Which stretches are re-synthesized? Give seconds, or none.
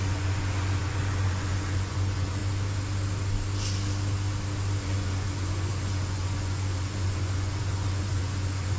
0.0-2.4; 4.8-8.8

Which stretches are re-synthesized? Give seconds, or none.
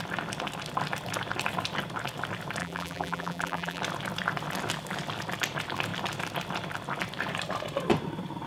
2.6-3.8